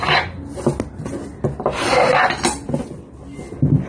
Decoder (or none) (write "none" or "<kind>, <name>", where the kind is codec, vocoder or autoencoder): none